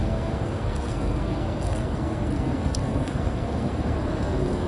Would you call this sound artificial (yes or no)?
yes